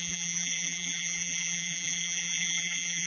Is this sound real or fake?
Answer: fake